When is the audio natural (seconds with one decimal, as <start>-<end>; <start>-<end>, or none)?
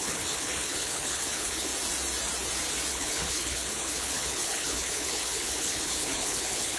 1.7-2.9